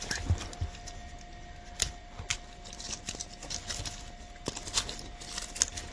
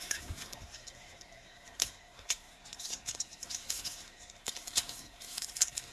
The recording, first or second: first